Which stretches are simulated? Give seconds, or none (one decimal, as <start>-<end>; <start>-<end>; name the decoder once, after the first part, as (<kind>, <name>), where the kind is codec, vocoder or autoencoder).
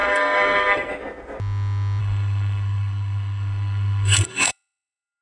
0.0-0.9 (codec, SNAC); 2.0-5.2